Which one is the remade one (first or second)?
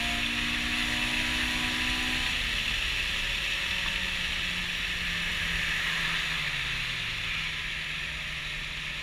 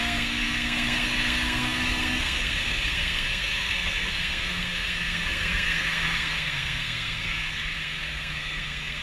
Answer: second